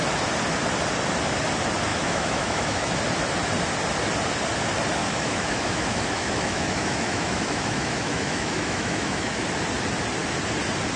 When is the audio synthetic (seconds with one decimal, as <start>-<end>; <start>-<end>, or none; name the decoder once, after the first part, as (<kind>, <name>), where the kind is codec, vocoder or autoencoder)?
1.9-2.9 (autoencoder, DAC-VAE); 5.0-9.4